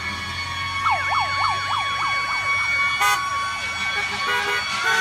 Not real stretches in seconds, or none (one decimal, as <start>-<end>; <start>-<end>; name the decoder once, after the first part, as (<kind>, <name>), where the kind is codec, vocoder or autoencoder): none